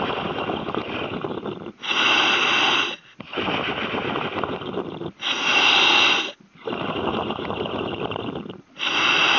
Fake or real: real